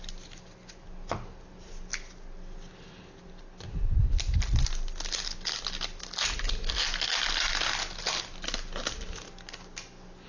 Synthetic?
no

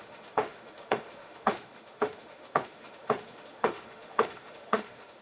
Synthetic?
yes